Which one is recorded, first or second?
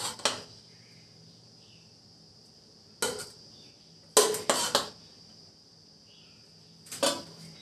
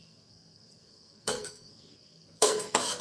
first